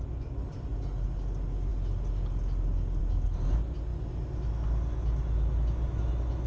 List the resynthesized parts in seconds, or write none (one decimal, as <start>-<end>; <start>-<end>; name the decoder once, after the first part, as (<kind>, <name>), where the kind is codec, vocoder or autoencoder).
none